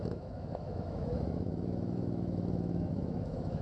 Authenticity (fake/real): fake